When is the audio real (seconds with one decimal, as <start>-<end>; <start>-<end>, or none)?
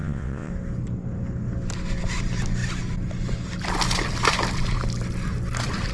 0.5-5.9